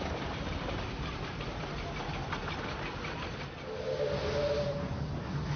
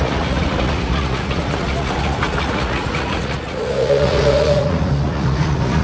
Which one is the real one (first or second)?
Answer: first